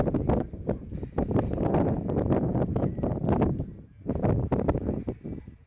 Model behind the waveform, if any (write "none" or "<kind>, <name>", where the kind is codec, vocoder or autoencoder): none